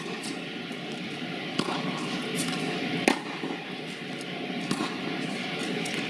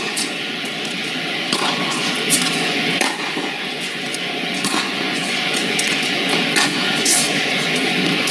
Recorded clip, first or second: first